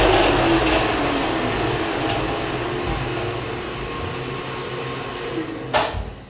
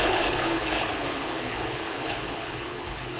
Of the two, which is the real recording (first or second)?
first